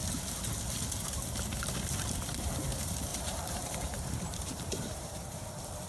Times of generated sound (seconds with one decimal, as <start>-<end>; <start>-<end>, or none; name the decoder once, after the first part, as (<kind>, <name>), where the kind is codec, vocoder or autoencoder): 3.1-5.5 (vocoder, BigVGAN v2)